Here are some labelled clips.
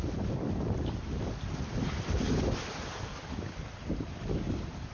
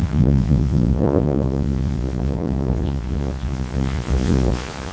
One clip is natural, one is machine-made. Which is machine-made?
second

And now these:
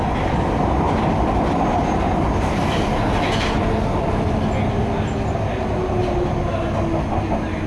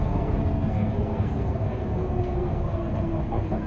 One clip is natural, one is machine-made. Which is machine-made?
second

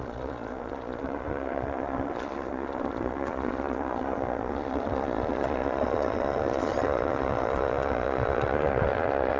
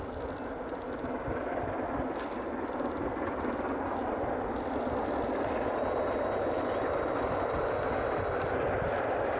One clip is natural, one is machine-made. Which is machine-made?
first